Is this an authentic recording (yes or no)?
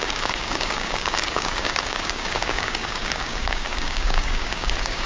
no